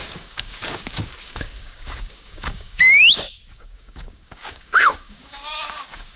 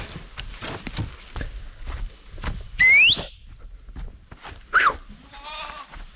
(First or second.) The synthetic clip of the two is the first